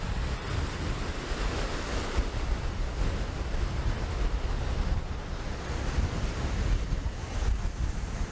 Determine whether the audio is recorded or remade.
recorded